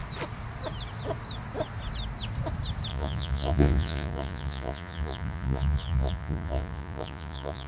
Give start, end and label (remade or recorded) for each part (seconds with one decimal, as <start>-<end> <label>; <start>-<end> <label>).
0.0-2.9 recorded; 2.9-7.7 remade